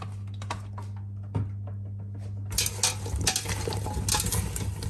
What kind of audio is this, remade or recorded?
recorded